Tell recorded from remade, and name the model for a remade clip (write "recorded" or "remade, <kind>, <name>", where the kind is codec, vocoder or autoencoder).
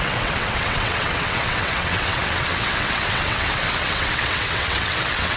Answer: remade, vocoder, WaveNeXt